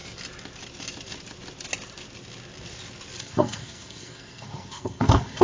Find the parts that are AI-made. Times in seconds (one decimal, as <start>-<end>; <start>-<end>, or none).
3.2-5.4